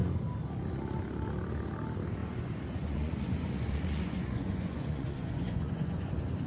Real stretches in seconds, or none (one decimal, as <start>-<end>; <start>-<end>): 0.0-2.2; 6.1-6.5

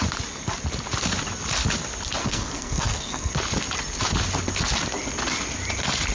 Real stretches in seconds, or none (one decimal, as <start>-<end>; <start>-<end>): 0.0-2.2; 3.3-6.1

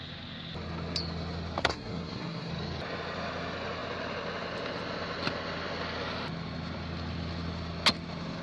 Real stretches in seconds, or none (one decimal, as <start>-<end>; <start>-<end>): 0.0-1.6; 2.5-8.4

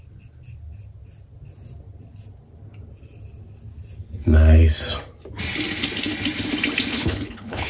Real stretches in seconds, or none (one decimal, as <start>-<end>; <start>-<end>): 0.0-6.9

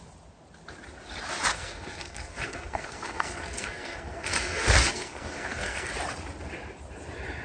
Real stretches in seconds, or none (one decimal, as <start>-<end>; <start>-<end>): 0.0-1.5; 5.9-7.4

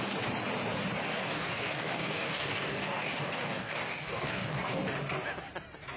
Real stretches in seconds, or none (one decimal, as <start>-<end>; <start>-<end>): 0.0-1.0; 4.6-6.0

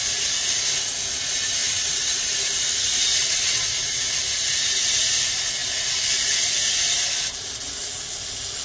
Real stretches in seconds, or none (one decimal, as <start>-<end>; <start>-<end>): 0.0-1.6; 2.3-3.1; 4.0-8.6

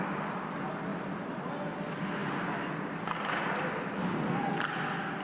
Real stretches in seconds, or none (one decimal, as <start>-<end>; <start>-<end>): 0.0-5.2